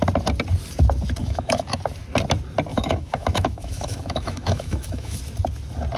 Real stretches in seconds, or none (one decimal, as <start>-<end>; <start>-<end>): 0.0-1.2; 1.8-2.7; 5.2-6.0